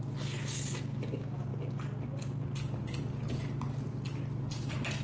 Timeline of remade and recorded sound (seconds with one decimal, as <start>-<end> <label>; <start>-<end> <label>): 0.0-5.0 recorded